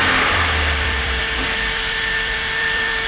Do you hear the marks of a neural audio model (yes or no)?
yes